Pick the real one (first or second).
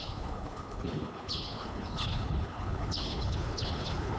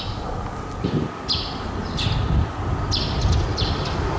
second